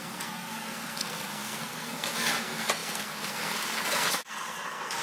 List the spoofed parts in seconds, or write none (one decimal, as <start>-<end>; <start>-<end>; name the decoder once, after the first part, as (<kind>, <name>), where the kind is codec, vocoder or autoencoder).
0.0-5.0 (codec, SNAC)